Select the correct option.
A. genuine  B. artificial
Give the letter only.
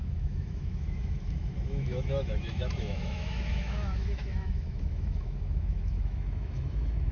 B